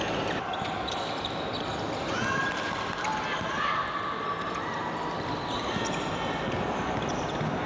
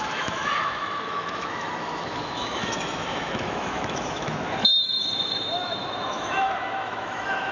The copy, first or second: second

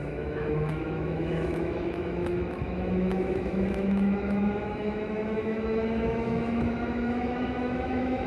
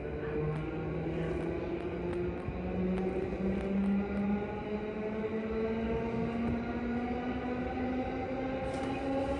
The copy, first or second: first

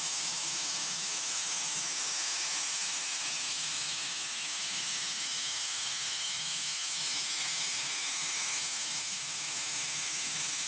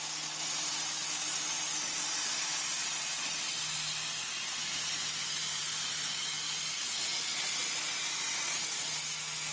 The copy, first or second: first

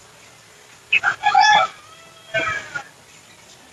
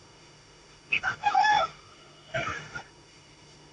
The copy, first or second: second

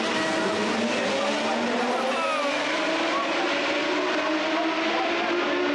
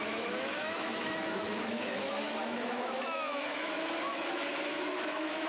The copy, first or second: second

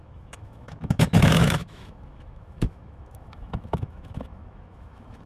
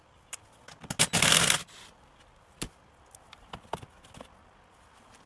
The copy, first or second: first